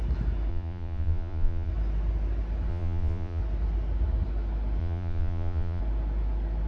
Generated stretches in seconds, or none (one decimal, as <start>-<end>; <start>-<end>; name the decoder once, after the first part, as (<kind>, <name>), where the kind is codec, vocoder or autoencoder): 0.5-1.7 (vocoder, Vocos); 2.7-3.4; 4.8-5.8